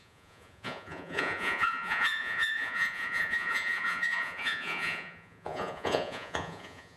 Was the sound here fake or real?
fake